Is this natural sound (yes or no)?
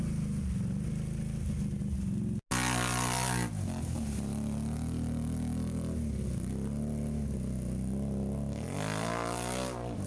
yes